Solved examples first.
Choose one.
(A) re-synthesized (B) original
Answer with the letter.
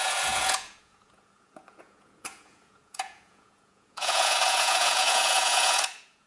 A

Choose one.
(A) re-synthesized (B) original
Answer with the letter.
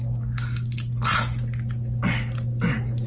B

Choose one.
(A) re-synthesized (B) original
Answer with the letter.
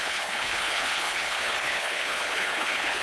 A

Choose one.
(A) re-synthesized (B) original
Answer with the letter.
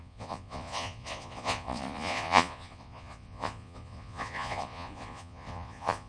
A